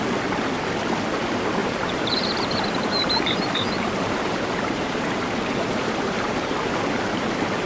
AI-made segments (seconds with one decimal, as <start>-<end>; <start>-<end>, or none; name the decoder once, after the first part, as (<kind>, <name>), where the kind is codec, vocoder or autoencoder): 1.6-6.1 (vocoder, BigVGAN v2)